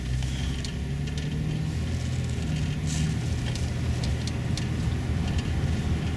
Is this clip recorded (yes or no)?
yes